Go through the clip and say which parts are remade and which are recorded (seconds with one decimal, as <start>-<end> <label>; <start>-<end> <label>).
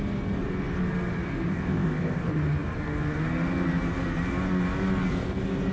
0.0-1.5 recorded; 1.5-2.2 remade; 2.2-5.7 recorded